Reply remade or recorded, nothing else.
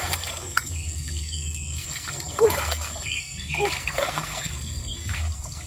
remade